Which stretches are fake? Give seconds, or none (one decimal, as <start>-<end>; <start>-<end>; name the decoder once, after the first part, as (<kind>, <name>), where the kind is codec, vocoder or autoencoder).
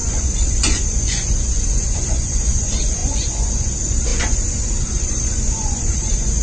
0.0-6.4 (vocoder, Vocos)